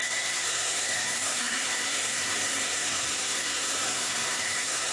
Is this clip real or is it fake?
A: fake